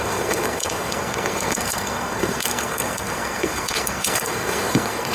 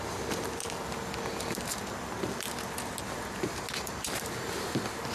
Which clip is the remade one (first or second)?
first